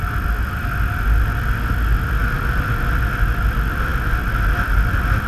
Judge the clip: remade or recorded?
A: recorded